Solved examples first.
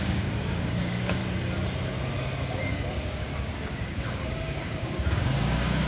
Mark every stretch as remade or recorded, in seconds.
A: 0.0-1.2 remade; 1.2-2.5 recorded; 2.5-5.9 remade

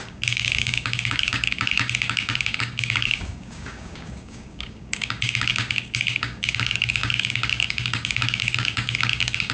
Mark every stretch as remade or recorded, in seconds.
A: 0.0-9.5 remade

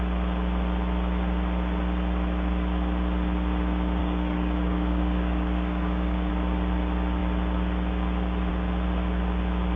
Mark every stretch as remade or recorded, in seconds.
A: 0.0-4.0 recorded; 4.0-6.3 remade; 6.3-9.8 recorded

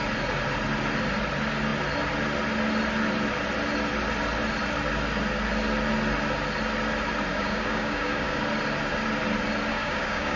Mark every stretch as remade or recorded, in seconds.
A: 0.0-7.3 recorded; 7.3-8.4 remade; 8.4-9.7 recorded; 9.7-10.4 remade

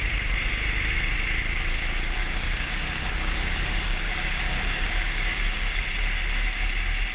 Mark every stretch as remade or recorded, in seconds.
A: 0.0-2.2 recorded; 2.2-5.8 remade; 5.8-7.1 recorded

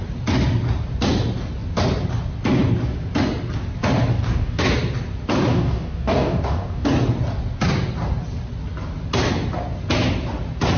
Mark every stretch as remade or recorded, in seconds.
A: 0.0-4.1 recorded; 4.1-4.6 remade; 4.6-5.5 recorded; 5.5-6.9 remade; 6.9-10.8 recorded

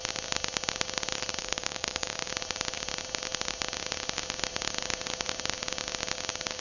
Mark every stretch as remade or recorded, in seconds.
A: 0.0-1.4 recorded; 1.4-2.3 remade; 2.3-6.6 recorded